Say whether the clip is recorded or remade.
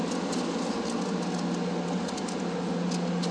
recorded